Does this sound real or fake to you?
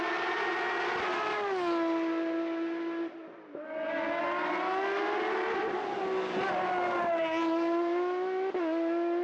real